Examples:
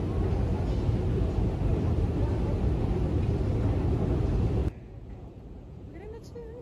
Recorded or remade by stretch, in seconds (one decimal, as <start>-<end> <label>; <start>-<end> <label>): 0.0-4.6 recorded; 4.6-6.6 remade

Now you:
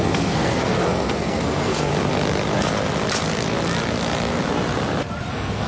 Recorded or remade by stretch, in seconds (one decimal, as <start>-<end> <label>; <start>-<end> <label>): 0.0-1.9 remade; 1.9-5.3 recorded; 5.3-5.7 remade

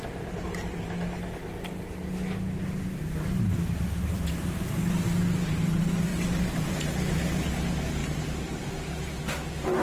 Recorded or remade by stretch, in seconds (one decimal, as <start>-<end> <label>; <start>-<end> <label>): 0.0-4.0 recorded; 4.0-5.1 remade; 5.1-6.1 recorded; 6.1-6.7 remade; 6.7-8.0 recorded; 8.0-8.6 remade; 8.6-9.8 recorded

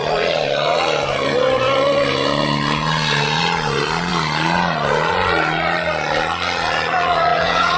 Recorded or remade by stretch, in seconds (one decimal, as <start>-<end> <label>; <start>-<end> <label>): 0.0-7.3 recorded; 7.3-7.8 remade